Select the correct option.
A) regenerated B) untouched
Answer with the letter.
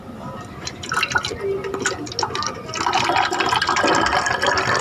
B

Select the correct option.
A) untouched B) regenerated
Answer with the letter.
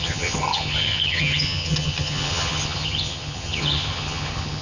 B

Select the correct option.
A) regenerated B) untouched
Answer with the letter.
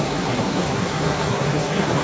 A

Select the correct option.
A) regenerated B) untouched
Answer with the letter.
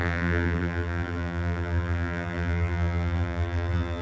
A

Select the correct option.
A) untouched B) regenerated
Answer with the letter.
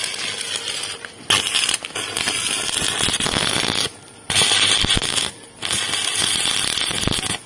A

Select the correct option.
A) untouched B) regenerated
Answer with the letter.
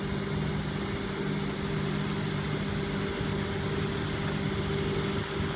A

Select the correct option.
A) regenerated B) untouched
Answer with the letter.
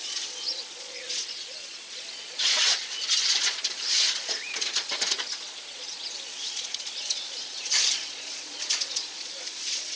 A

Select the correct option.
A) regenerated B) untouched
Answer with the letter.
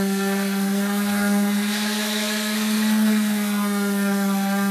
A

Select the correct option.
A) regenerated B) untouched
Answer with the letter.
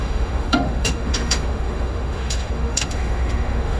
A